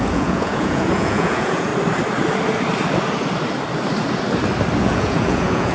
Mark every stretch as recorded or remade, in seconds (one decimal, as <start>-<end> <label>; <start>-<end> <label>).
0.0-1.7 remade; 1.7-4.8 recorded; 4.8-5.7 remade

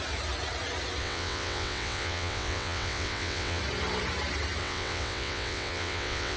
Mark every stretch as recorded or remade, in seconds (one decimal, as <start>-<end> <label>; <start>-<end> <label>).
0.0-1.0 recorded; 1.0-3.6 remade; 3.6-4.6 recorded; 4.6-6.4 remade

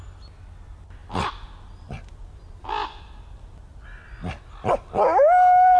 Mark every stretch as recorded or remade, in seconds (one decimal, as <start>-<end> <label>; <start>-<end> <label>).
0.0-5.8 recorded

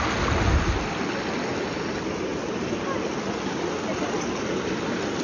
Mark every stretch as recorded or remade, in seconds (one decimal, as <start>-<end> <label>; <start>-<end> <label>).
0.0-5.2 recorded

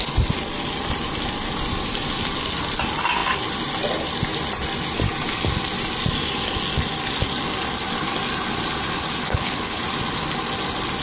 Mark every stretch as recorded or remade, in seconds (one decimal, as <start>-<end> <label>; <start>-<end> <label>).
0.0-9.2 recorded; 9.2-9.8 remade; 9.8-11.0 recorded

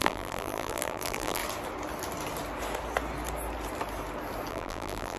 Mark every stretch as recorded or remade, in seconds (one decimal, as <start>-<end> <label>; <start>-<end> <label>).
0.0-1.4 remade; 1.4-4.5 recorded; 4.5-5.2 remade

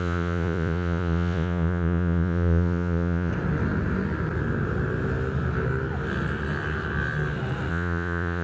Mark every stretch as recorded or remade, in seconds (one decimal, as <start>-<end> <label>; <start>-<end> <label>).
0.0-3.3 remade; 3.3-7.7 recorded; 7.7-8.4 remade

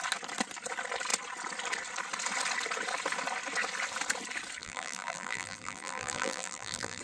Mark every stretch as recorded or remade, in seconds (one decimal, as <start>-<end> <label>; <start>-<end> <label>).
0.0-4.6 recorded; 4.6-7.0 remade